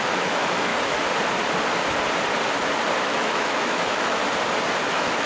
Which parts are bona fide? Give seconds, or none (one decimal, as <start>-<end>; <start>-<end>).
0.7-3.0; 4.2-4.8